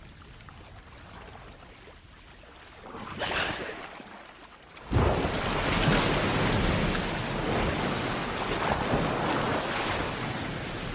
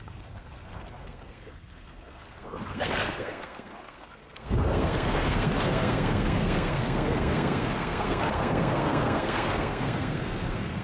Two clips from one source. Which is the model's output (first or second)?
second